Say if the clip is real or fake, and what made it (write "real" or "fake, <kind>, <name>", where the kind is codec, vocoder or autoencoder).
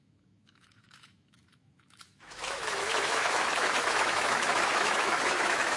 fake, autoencoder, DAC-VAE